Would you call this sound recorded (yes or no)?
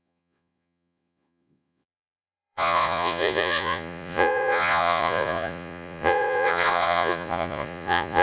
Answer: no